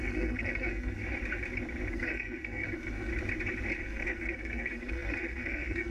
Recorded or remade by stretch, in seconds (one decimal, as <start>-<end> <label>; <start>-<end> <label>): 0.0-1.0 remade; 1.0-1.9 recorded; 1.9-3.1 remade; 3.1-3.8 recorded; 3.8-5.9 remade